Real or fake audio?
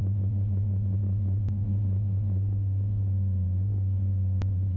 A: real